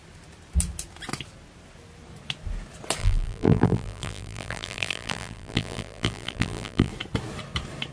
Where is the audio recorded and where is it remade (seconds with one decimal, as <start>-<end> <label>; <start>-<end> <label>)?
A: 0.0-3.0 recorded; 3.0-6.9 remade; 6.9-7.9 recorded